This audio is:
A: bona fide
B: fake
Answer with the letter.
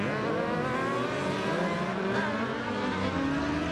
A